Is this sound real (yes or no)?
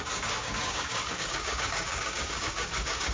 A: no